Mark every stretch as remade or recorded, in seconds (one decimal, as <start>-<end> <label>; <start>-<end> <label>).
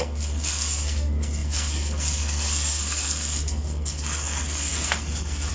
0.0-5.5 remade